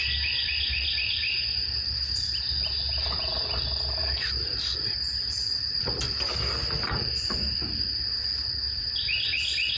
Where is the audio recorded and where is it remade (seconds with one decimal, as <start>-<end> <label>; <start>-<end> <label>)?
0.0-9.8 recorded